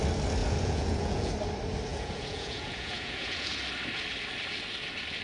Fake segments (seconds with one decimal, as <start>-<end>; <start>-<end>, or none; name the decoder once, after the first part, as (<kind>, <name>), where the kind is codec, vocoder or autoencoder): 0.4-1.3 (vocoder, Vocos); 1.9-3.5